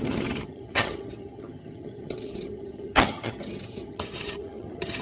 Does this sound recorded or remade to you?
remade